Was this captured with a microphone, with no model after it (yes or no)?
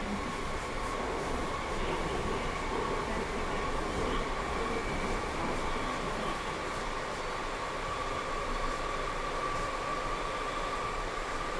yes